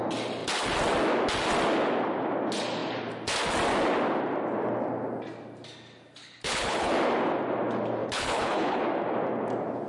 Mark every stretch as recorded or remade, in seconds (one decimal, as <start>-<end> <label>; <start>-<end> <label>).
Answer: 0.0-6.2 recorded; 6.2-6.9 remade; 6.9-8.0 recorded; 8.0-8.8 remade; 8.8-9.9 recorded